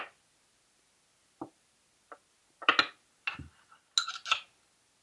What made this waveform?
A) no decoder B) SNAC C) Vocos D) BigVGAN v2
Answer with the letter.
A